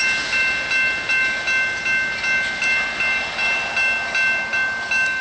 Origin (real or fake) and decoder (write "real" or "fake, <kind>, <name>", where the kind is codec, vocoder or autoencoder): real